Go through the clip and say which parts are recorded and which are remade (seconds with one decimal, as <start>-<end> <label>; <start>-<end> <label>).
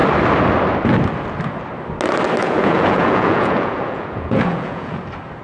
0.0-2.4 recorded; 2.4-5.0 remade; 5.0-5.4 recorded